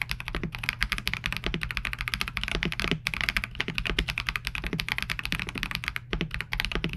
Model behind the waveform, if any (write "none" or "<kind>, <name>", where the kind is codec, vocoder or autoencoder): none